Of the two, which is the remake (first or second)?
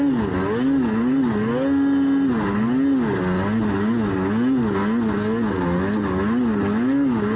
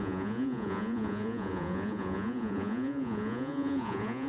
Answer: second